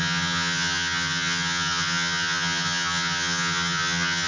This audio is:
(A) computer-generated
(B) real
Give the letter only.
A